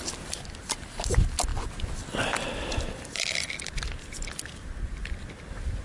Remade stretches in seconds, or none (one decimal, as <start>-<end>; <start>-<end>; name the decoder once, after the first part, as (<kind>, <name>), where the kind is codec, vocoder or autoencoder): none

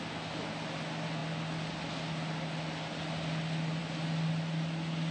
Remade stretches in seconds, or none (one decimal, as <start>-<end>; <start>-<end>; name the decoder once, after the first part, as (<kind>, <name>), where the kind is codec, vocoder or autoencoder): none

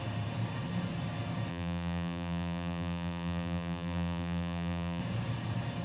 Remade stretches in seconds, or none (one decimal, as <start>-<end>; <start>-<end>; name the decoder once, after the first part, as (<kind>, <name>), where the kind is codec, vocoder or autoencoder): 1.5-5.0 (vocoder, BigVGAN v2)

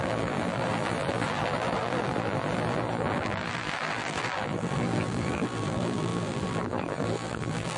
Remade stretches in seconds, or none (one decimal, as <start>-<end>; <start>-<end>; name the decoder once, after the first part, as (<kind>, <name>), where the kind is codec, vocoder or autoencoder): 0.0-7.8 (vocoder, BigVGAN v2)

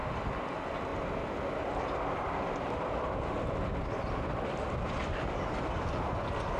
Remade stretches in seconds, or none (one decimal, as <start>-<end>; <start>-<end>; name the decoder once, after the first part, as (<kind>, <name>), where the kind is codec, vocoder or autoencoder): none

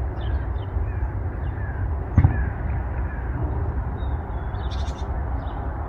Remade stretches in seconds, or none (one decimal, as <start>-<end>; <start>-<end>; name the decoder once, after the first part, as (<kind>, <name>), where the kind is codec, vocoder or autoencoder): 2.8-4.1 (vocoder, BigVGAN v2)

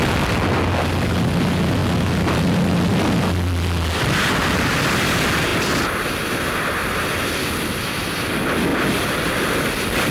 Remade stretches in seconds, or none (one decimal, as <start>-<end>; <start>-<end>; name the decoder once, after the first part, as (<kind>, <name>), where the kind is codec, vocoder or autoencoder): none

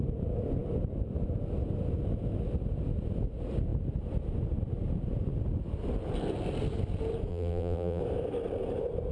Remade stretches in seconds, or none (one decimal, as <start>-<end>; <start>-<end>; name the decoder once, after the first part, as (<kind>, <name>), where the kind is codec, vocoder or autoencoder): 7.3-8.0 (vocoder, BigVGAN v2)